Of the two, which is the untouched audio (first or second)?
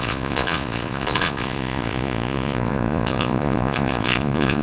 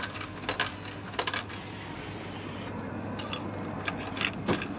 second